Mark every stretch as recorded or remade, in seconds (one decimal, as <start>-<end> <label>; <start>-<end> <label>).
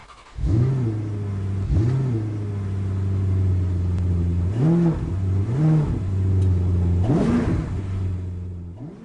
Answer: 0.0-0.7 remade; 0.7-9.0 recorded